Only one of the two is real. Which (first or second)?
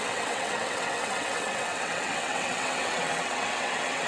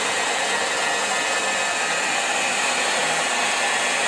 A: second